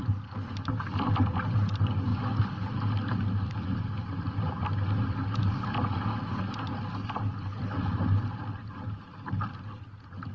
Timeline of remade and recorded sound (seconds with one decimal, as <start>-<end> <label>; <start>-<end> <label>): 0.0-10.3 recorded